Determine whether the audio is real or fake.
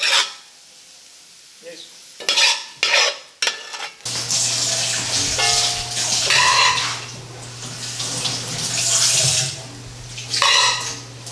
real